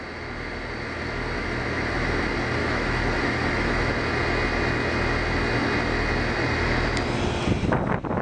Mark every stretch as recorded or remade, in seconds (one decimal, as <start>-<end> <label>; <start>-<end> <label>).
0.0-2.6 recorded; 2.6-3.9 remade; 3.9-8.2 recorded